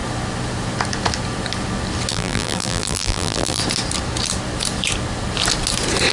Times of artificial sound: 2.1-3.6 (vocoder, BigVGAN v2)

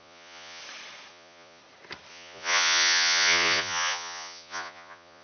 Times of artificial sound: 0.0-0.6 (vocoder, Vocos); 1.1-1.6; 2.1-5.2